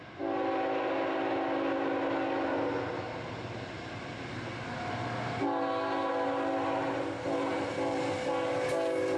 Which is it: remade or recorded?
recorded